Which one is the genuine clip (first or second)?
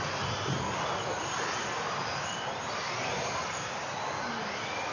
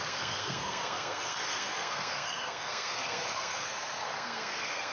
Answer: first